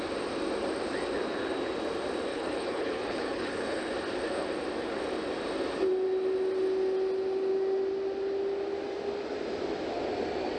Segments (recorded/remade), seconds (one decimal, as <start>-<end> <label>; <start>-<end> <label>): 0.0-2.3 recorded; 2.3-3.9 remade; 3.9-10.6 recorded